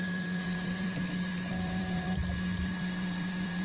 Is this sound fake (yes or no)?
yes